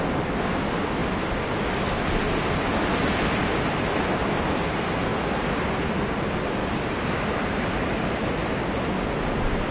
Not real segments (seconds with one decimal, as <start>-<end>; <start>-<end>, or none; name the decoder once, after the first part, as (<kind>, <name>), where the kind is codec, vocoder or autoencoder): 6.6-7.8 (vocoder, BigVGAN v2)

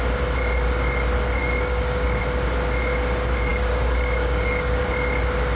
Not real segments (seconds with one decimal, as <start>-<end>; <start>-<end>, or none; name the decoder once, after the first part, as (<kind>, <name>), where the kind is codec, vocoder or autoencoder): 1.4-2.2 (codec, DAC); 3.5-4.8

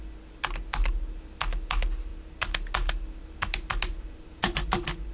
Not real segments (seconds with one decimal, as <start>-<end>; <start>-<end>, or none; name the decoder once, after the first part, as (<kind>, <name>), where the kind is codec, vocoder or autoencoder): none

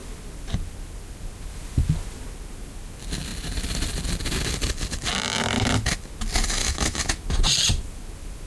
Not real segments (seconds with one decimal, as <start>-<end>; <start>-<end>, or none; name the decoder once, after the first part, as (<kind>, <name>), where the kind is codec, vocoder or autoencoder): 6.6-7.1 (autoencoder, DAC-VAE)

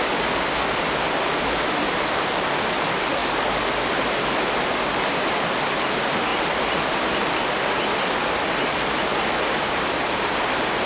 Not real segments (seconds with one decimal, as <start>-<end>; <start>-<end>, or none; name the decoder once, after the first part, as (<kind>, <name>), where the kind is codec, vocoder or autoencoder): 6.3-10.9 (vocoder, BigVGAN v2)

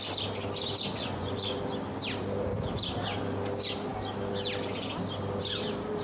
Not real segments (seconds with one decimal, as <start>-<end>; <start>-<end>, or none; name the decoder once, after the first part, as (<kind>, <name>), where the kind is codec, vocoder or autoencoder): 1.0-1.6 (vocoder, Vocos)